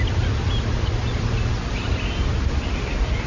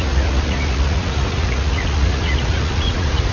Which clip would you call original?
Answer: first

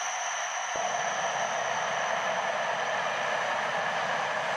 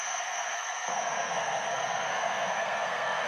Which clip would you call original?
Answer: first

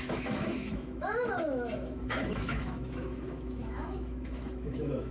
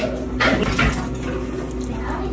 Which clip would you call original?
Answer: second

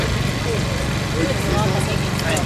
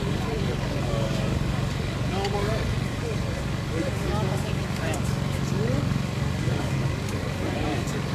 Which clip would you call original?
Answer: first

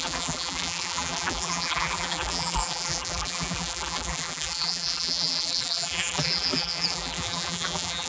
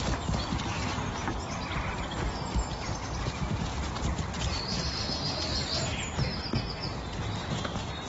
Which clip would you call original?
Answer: second